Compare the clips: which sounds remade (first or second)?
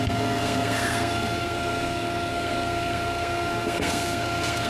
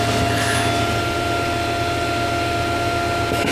first